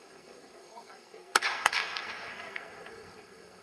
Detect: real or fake fake